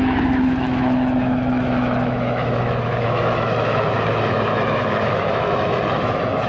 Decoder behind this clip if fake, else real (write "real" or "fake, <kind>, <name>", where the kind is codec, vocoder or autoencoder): fake, autoencoder, DAC-VAE